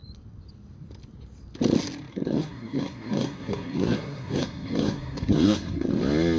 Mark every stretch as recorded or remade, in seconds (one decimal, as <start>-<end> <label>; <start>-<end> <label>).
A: 0.0-2.1 recorded; 2.1-5.9 remade; 5.9-6.4 recorded